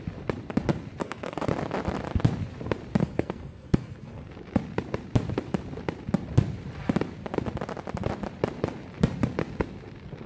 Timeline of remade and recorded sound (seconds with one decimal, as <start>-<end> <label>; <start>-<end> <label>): 0.0-1.0 recorded; 1.0-1.5 remade; 1.5-3.0 recorded; 3.0-4.3 remade; 4.3-10.3 recorded